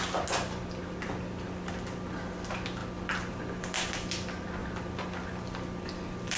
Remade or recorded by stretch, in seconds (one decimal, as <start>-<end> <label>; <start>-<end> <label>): 0.0-2.8 recorded; 2.8-3.4 remade; 3.4-4.6 recorded; 4.6-6.4 remade